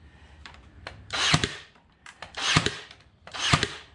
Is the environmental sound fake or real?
fake